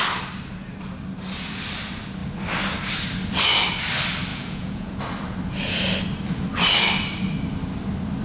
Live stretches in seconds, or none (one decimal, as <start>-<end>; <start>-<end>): 0.0-4.3; 5.0-8.2